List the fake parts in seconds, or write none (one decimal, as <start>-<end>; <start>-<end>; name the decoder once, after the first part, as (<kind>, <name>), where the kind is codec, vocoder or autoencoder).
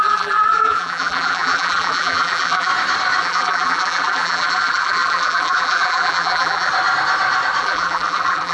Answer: 0.0-2.7 (vocoder, BigVGAN v2); 3.2-6.7; 7.6-8.5